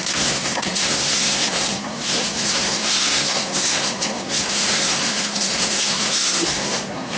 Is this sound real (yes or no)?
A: no